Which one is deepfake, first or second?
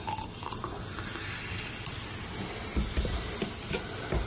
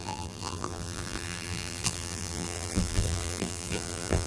second